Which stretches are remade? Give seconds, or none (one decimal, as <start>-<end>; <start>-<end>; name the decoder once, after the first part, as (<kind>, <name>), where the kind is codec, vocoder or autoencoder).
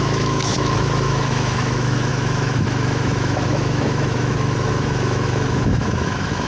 0.0-6.5 (autoencoder, DAC-VAE)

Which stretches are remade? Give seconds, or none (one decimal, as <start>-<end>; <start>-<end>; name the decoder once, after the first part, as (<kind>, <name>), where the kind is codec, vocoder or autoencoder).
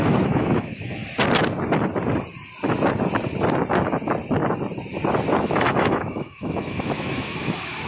0.0-1.0 (autoencoder, DAC-VAE); 5.4-7.9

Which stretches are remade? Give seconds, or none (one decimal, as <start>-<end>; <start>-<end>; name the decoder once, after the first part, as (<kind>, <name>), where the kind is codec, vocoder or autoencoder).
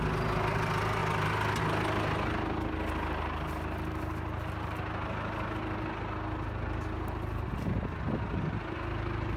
none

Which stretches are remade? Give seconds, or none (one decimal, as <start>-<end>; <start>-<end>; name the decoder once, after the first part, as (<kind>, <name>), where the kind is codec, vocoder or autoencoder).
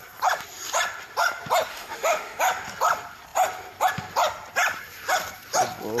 1.7-2.4 (autoencoder, DAC-VAE)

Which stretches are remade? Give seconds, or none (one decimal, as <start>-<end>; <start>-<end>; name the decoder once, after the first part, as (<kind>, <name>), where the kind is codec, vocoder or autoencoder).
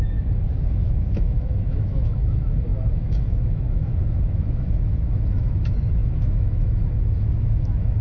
0.0-8.0 (autoencoder, DAC-VAE)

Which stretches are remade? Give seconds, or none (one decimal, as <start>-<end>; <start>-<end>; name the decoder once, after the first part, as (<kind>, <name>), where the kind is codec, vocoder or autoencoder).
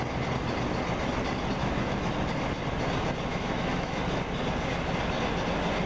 1.6-2.1 (autoencoder, DAC-VAE); 3.3-4.2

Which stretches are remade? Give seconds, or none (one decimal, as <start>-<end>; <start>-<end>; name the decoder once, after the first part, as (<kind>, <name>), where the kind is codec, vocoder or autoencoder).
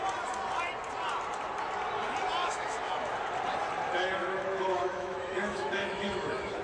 2.4-3.1 (autoencoder, DAC-VAE); 4.2-6.6